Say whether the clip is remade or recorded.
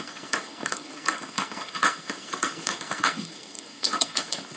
remade